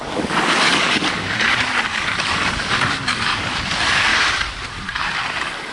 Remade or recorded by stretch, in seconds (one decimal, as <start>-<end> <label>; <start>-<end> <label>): 0.0-4.1 remade; 4.1-5.7 recorded